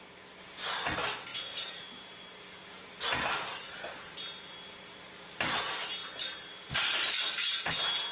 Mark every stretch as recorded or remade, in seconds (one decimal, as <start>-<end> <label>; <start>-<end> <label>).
0.0-1.3 recorded; 1.3-2.2 remade; 2.2-8.1 recorded